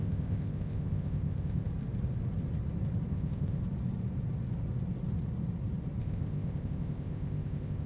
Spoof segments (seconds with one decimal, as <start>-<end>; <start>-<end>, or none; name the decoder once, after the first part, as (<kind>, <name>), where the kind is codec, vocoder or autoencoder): 0.0-1.7 (codec, ZipCodec); 3.1-3.6; 6.0-7.9